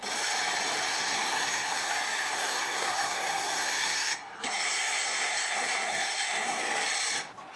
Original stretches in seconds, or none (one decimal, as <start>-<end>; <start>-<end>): 0.0-0.9; 1.9-2.3; 6.6-7.6